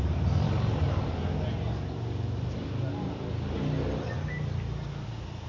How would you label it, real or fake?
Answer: real